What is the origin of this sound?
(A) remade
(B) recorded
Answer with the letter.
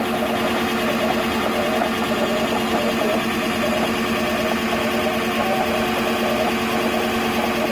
B